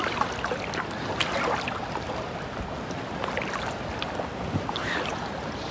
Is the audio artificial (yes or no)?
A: no